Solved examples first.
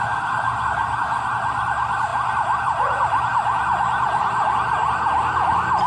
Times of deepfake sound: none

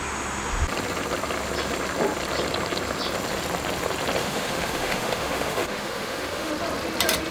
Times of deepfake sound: 4.2-6.5

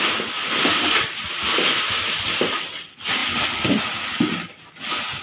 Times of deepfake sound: none

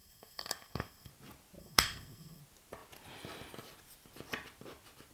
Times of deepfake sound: 0.0-1.1; 1.6-2.4

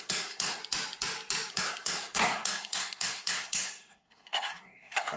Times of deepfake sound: 0.0-0.6; 1.5-5.2

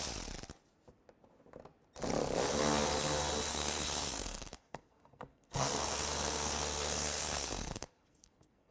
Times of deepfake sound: 3.5-8.7

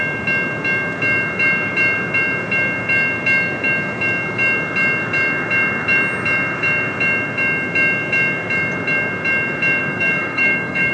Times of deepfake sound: 9.8-10.9

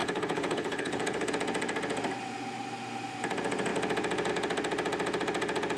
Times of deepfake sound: 0.0-1.3